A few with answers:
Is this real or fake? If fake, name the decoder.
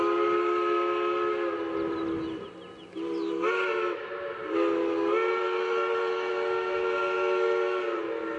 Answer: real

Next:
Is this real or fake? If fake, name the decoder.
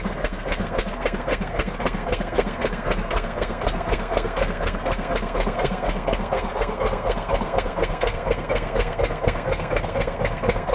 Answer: fake, codec, SNAC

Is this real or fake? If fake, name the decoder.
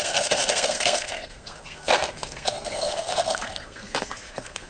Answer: fake, codec, SNAC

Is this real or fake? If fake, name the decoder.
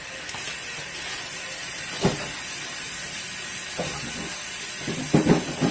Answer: real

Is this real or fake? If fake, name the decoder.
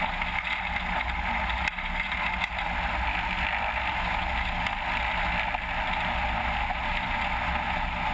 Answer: real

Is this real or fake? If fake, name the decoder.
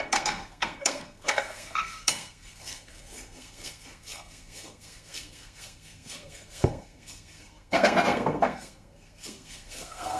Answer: fake, codec, SNAC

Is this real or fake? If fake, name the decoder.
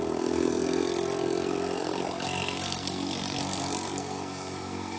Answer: fake, codec, SNAC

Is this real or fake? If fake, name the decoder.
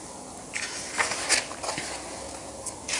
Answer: real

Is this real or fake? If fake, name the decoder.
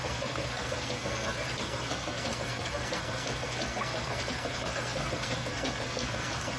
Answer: fake, codec, SNAC